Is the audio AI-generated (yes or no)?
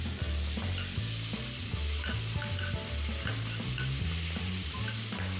no